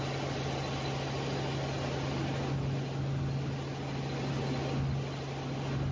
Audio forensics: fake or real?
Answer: real